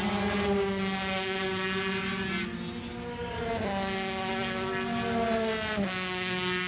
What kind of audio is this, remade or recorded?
recorded